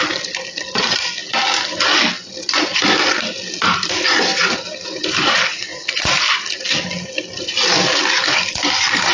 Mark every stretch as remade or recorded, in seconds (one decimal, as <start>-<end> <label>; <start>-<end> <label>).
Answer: 0.0-4.3 recorded; 4.3-6.2 remade; 6.2-9.1 recorded